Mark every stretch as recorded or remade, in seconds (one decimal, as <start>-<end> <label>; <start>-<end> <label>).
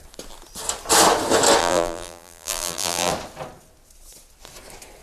0.0-1.6 recorded; 1.6-3.1 remade; 3.1-5.0 recorded